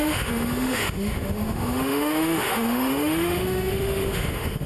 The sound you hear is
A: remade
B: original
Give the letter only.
A